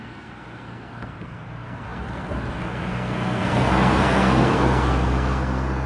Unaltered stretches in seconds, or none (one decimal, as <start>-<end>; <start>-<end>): none